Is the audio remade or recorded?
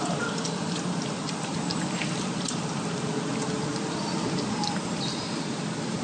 recorded